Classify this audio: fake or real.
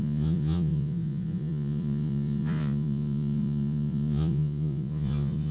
fake